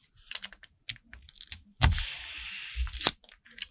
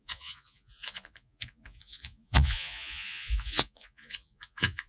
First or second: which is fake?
second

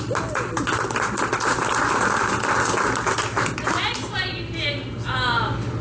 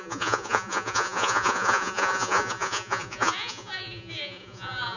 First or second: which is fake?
second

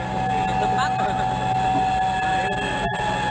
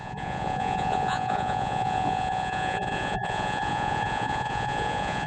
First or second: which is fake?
second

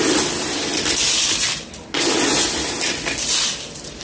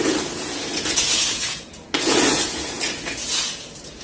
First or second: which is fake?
second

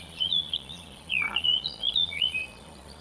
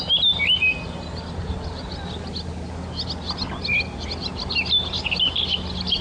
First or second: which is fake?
first